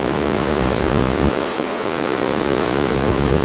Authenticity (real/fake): fake